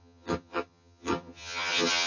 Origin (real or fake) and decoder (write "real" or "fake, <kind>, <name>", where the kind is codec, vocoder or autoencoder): fake, vocoder, HiFi-GAN